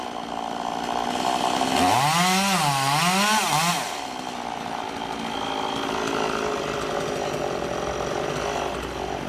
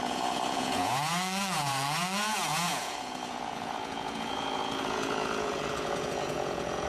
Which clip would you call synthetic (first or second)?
second